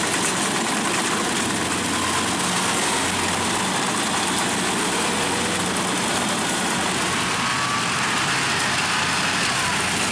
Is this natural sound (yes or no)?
yes